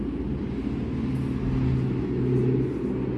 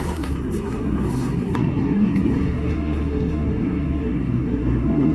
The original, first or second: first